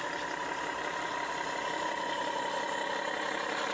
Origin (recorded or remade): recorded